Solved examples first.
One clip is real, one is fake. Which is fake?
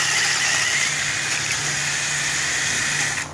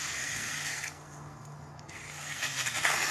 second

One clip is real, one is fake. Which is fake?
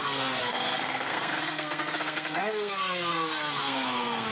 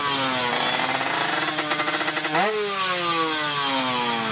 first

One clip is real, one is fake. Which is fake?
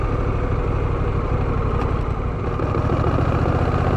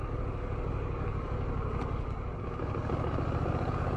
second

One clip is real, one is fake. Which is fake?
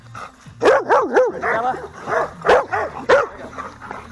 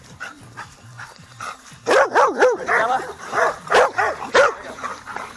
second